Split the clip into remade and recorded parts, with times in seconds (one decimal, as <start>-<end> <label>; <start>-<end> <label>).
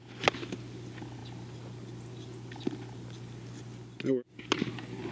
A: 0.0-5.1 recorded